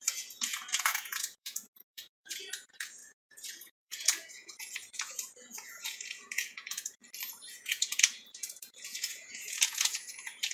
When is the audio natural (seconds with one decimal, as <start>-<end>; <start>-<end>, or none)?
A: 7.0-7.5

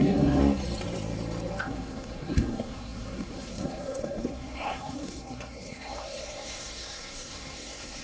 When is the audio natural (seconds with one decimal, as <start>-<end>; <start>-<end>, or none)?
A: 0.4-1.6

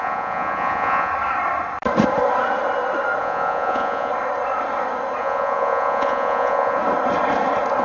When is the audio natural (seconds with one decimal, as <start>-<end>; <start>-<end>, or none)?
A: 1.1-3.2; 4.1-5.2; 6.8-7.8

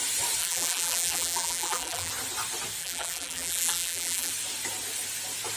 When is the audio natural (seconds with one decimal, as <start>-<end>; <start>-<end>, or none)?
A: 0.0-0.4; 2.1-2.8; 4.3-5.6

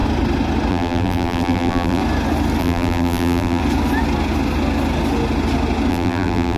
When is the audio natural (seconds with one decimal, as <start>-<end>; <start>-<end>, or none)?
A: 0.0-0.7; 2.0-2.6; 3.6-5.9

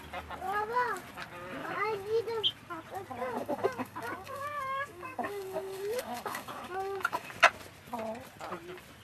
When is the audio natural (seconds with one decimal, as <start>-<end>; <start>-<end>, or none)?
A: 0.0-1.6; 2.2-3.2; 7.3-9.0